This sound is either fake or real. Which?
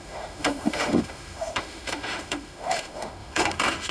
fake